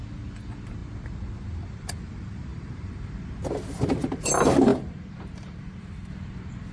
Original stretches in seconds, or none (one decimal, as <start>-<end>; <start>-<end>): 0.0-2.5; 4.3-4.7; 6.1-6.7